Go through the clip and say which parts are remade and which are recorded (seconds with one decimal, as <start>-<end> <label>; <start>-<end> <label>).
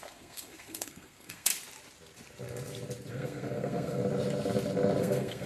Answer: 0.0-1.5 remade; 1.5-3.1 recorded; 3.1-4.0 remade; 4.0-5.0 recorded; 5.0-5.5 remade